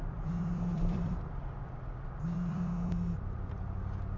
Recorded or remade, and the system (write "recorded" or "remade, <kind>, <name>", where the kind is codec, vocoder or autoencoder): remade, vocoder, BigVGAN v2